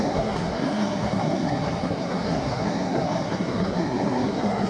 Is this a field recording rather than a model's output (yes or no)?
no